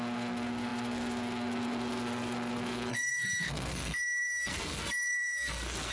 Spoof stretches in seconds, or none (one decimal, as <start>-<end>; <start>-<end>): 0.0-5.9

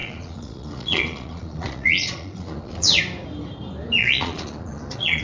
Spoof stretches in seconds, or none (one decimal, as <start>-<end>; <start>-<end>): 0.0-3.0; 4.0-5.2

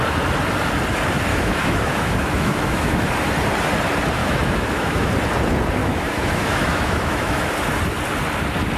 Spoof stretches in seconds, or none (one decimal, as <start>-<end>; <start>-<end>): 1.3-3.1; 4.2-5.1; 5.8-7.5

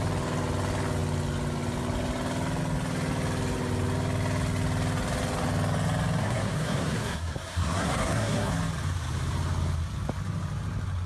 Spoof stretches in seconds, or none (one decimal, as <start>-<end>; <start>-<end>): 6.2-8.5

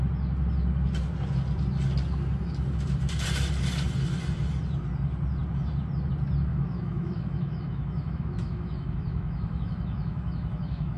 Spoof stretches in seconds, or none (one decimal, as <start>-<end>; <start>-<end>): 6.5-11.0